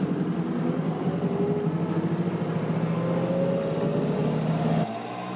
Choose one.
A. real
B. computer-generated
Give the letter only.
A